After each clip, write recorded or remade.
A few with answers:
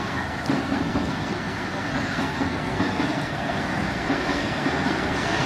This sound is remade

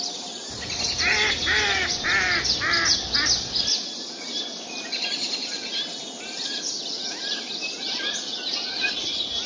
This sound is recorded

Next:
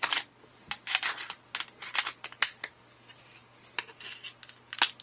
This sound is recorded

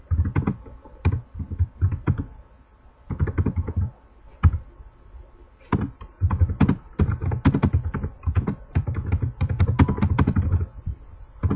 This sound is recorded